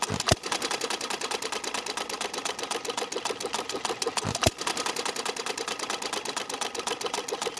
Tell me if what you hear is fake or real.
real